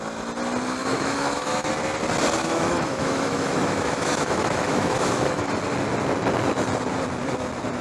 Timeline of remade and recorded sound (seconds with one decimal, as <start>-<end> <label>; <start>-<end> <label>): 0.0-0.8 recorded; 0.8-1.7 remade; 1.7-2.4 recorded; 2.4-5.5 remade; 5.5-7.8 recorded